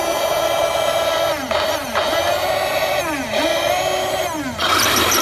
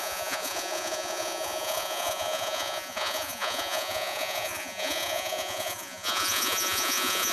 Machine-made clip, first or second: second